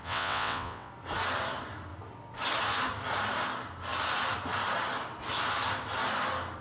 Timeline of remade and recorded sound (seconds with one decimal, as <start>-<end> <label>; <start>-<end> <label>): 0.0-0.9 remade; 0.9-6.6 recorded